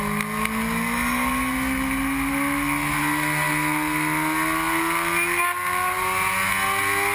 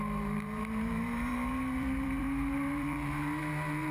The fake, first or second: second